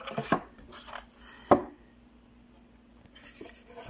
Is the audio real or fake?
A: fake